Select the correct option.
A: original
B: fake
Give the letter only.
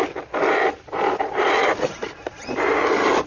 A